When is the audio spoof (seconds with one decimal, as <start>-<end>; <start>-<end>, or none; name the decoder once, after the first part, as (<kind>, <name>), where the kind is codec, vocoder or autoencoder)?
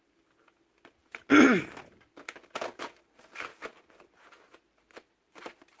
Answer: none